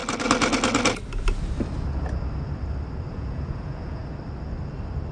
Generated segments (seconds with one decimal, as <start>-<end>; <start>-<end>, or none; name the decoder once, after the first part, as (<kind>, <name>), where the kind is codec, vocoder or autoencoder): 3.1-4.0 (vocoder, Vocos)